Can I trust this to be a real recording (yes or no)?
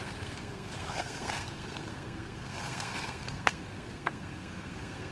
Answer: no